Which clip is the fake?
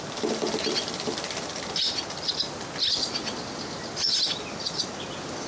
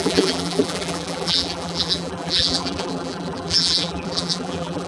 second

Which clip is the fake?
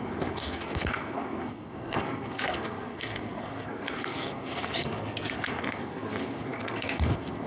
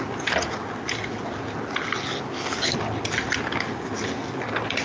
first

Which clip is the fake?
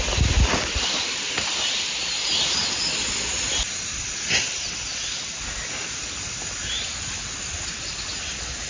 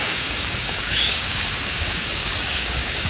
second